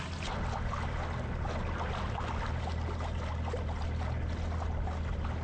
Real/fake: real